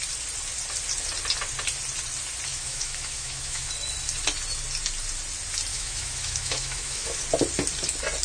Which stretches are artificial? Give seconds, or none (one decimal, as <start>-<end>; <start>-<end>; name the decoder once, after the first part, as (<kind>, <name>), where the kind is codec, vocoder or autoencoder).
2.5-3.7 (autoencoder, DAC-VAE); 5.7-7.2